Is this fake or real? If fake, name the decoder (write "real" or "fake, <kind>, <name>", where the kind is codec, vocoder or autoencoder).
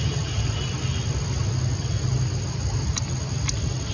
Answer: real